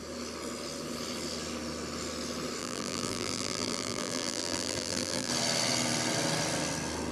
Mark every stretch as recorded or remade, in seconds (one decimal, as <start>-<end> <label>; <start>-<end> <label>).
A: 0.0-2.6 recorded; 2.6-5.3 remade; 5.3-7.1 recorded